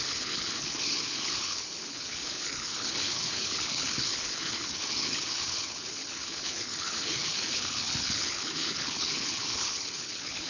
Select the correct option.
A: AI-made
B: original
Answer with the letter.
A